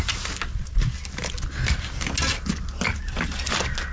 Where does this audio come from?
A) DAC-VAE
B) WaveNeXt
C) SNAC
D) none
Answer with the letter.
D